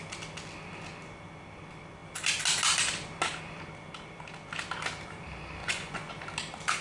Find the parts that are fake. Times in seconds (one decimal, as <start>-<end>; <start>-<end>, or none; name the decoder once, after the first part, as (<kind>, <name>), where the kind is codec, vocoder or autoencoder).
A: 5.6-6.1 (vocoder, Vocos)